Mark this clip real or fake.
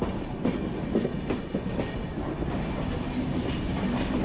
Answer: real